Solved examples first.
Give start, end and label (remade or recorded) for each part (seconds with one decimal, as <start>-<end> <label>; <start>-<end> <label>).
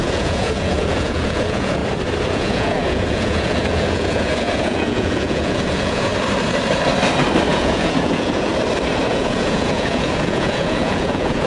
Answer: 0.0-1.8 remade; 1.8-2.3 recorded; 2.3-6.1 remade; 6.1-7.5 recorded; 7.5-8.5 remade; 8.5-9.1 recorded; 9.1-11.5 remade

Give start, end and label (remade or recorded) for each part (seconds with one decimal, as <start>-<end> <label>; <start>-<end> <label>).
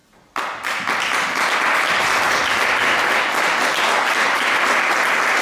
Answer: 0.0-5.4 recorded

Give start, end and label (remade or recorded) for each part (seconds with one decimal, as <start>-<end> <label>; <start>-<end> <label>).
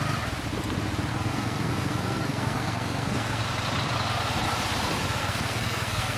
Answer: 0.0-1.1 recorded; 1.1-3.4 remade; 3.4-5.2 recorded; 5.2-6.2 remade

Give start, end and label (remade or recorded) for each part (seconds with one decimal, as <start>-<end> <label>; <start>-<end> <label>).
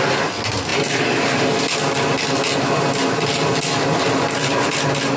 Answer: 0.0-5.2 recorded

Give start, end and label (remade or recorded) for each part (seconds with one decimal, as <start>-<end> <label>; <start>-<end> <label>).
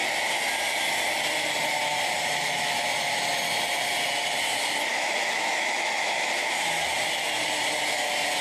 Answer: 0.0-4.9 recorded; 4.9-6.3 remade; 6.3-8.4 recorded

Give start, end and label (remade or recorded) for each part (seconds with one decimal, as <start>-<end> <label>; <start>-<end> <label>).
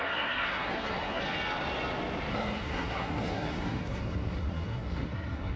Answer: 0.0-1.2 remade; 1.2-2.3 recorded; 2.3-5.6 remade